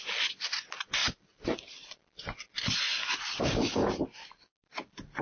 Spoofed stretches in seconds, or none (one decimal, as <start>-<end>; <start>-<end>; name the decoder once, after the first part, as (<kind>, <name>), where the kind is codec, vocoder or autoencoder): 3.8-4.3 (vocoder, BigVGAN v2)